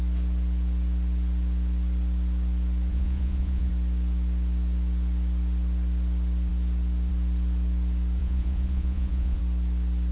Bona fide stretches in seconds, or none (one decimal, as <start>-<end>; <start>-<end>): 0.0-2.9; 3.7-8.2; 9.4-10.1